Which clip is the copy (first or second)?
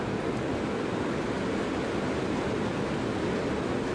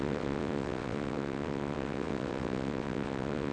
second